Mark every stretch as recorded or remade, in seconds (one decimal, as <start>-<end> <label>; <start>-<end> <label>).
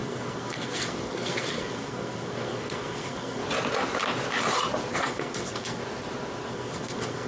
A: 0.0-3.4 remade; 3.4-4.9 recorded; 4.9-5.8 remade; 5.8-6.5 recorded; 6.5-7.3 remade